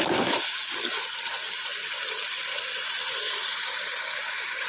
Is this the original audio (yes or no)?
yes